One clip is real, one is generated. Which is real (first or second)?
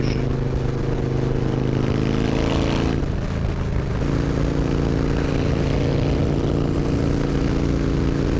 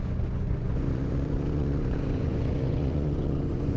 first